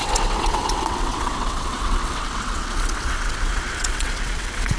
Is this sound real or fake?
fake